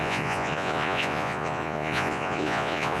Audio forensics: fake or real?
fake